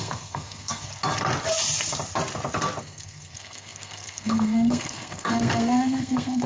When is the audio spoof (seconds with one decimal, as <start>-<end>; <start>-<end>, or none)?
0.0-0.9; 2.8-6.5